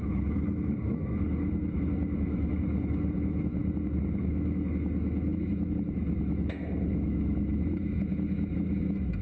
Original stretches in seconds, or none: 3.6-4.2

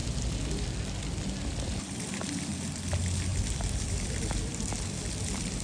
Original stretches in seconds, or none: 0.0-5.6

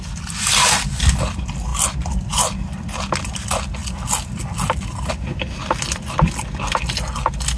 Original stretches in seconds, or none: 0.0-7.6

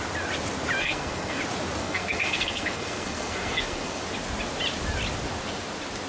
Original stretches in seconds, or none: 0.0-0.8; 1.4-1.8; 4.0-6.1

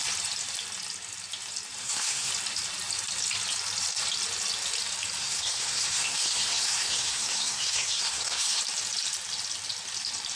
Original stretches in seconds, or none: 0.0-1.8; 2.3-5.2; 8.6-10.4

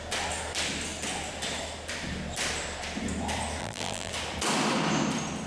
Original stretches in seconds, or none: 0.0-3.6; 4.1-5.5

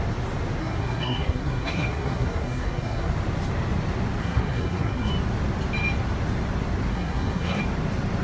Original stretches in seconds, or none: 0.0-0.6; 3.1-4.2; 5.1-6.9; 7.6-8.2